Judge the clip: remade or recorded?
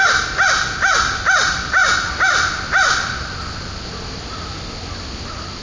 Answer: recorded